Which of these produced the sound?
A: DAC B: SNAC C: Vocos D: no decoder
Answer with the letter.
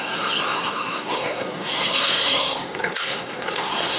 B